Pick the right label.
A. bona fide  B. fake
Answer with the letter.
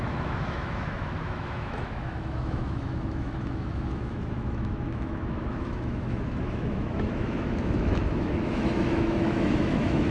B